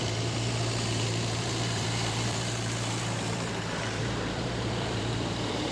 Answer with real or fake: fake